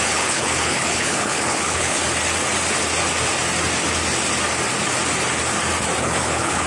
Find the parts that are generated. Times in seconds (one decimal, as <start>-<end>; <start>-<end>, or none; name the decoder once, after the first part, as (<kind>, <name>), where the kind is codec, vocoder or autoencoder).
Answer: 0.0-2.0 (codec, HILCodec); 6.0-6.7